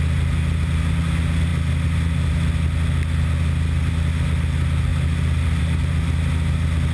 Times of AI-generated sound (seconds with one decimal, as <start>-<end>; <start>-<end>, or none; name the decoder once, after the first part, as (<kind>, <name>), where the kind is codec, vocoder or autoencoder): none